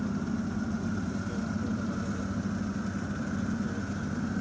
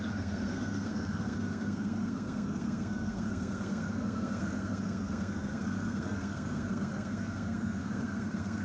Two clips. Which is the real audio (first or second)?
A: first